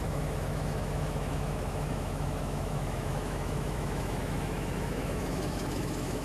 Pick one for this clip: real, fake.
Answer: fake